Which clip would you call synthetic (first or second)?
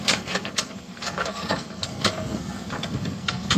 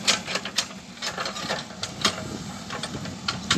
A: first